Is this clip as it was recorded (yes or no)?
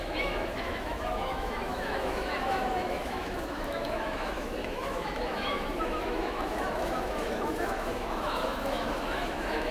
no